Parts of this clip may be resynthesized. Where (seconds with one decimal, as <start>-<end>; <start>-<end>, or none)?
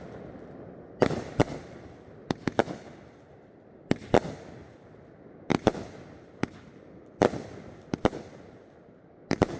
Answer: none